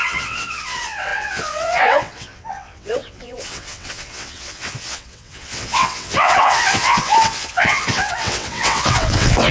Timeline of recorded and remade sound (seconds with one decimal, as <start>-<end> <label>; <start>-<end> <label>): 0.0-9.5 remade